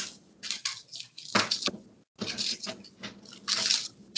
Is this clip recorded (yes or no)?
yes